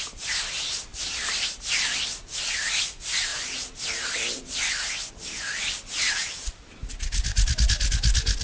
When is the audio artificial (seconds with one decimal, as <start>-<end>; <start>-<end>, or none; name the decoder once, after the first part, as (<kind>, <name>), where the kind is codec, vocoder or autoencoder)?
none